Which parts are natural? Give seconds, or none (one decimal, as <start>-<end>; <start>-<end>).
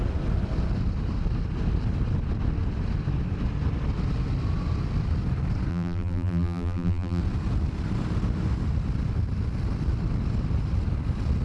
0.0-5.7; 7.2-11.4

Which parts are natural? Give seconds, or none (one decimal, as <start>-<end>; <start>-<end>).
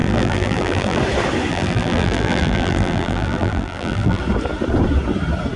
1.0-1.5; 4.2-5.6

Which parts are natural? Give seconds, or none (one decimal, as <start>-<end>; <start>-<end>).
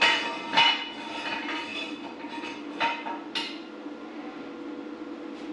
0.0-1.7; 2.7-5.5